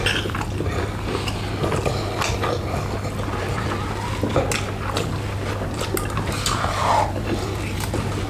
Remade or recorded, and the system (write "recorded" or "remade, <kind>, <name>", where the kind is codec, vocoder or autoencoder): recorded